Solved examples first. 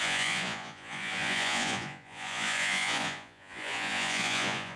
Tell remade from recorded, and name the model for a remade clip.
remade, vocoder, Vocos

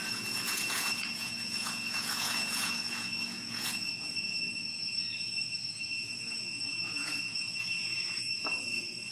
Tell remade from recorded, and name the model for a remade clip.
remade, vocoder, Vocos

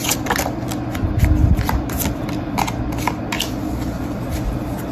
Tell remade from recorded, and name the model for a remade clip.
recorded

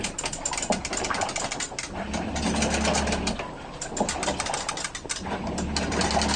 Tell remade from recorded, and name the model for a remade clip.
recorded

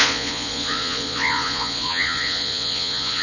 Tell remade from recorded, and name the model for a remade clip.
remade, vocoder, Vocos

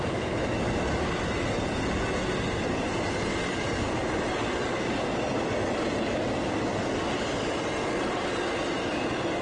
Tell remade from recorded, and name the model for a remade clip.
recorded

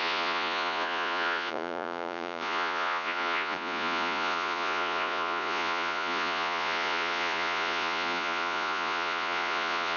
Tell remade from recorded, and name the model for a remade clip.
remade, vocoder, Vocos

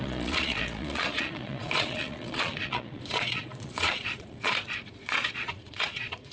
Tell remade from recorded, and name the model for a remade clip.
remade, vocoder, Vocos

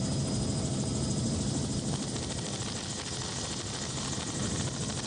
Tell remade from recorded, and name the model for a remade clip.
recorded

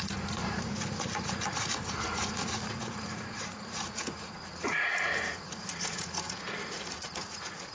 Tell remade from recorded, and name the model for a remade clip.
remade, vocoder, Vocos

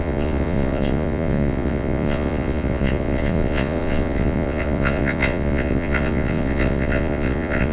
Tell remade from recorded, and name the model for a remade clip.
remade, vocoder, Vocos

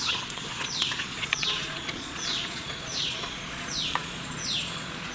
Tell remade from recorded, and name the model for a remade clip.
remade, vocoder, Vocos